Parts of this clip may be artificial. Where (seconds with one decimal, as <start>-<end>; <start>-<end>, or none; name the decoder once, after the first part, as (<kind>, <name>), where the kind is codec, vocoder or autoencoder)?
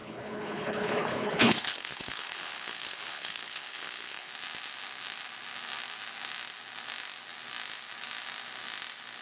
0.0-4.3 (codec, HILCodec)